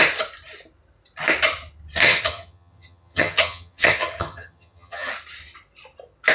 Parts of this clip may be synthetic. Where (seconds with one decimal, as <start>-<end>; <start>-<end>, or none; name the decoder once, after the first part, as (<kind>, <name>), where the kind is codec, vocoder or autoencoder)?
2.0-5.1 (vocoder, HiFi-GAN)